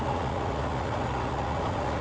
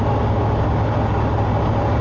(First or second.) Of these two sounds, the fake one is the first